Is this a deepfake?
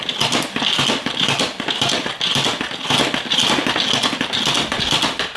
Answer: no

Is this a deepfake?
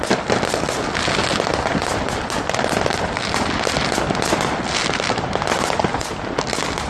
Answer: no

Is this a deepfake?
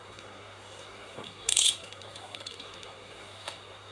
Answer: yes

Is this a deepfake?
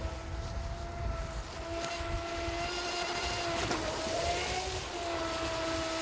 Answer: no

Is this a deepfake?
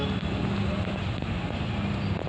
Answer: no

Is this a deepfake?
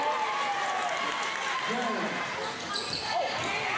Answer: no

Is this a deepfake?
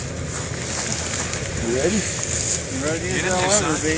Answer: no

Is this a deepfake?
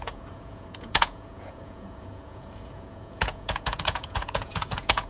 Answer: yes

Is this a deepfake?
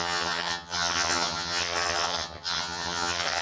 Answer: yes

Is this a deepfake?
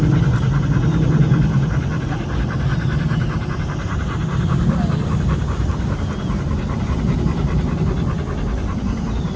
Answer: no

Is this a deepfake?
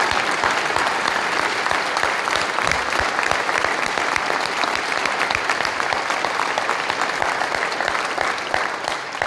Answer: yes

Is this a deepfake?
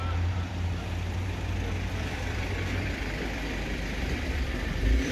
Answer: yes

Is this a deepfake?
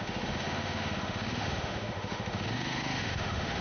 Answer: yes